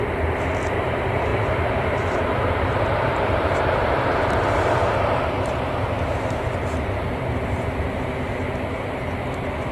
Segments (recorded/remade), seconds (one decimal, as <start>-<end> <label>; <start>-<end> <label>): 0.0-1.3 recorded; 1.3-3.5 remade; 3.5-4.8 recorded; 4.8-7.8 remade; 7.8-9.7 recorded